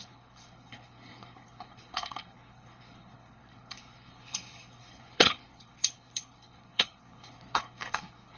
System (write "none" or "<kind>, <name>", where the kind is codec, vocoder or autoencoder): codec, HILCodec